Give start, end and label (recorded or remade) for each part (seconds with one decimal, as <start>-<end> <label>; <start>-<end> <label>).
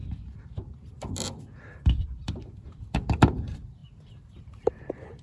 0.0-5.2 remade